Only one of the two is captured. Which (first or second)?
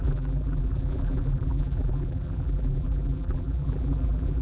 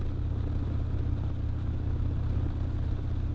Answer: second